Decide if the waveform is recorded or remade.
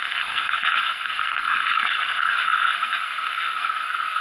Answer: remade